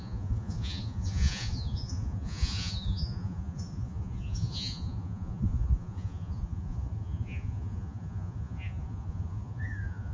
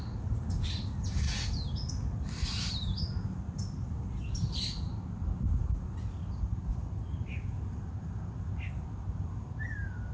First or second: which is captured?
second